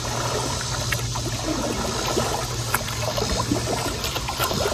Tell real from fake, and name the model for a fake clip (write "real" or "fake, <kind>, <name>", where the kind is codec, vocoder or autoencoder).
real